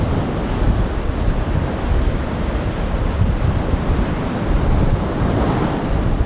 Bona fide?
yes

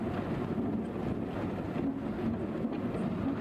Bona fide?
yes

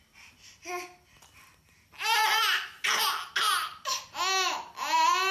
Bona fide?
yes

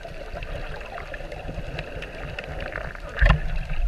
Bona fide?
yes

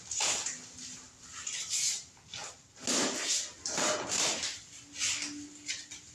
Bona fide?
yes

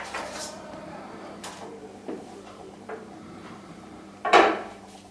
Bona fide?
no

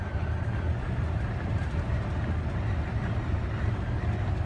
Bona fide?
yes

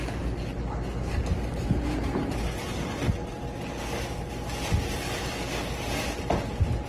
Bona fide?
yes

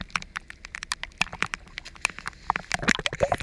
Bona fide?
yes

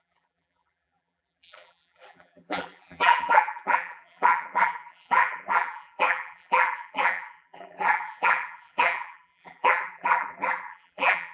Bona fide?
no